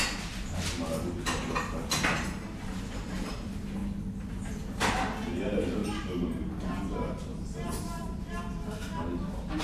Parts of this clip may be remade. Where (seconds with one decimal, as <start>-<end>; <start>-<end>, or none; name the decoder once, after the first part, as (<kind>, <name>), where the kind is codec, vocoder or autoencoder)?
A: 5.8-6.8 (vocoder, BigVGAN v2); 7.3-8.3